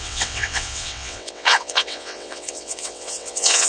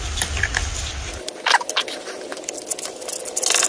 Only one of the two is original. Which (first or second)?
second